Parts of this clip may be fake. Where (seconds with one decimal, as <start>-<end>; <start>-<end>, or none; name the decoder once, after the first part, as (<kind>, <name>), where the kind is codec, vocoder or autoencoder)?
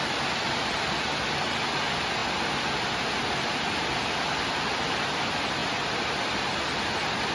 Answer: none